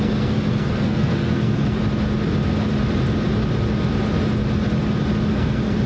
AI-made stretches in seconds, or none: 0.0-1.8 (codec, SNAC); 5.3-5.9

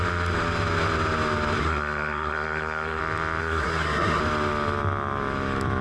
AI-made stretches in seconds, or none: 1.6-3.0 (codec, SNAC); 3.4-4.2

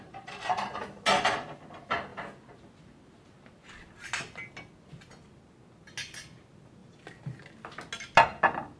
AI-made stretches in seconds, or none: none

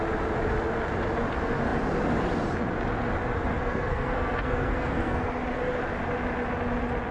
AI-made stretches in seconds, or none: 3.5-5.3 (codec, SNAC)

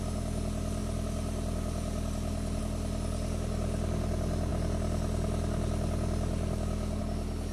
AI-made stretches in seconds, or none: none